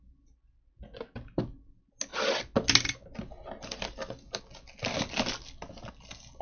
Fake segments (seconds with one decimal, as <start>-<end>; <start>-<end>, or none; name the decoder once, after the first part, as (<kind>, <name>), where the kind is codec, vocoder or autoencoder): none